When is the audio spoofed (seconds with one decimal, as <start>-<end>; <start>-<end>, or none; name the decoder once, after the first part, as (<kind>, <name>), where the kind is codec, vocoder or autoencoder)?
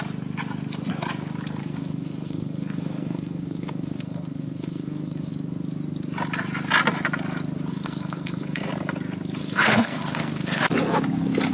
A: 1.6-5.3 (codec, SNAC); 7.7-8.7; 9.4-10.6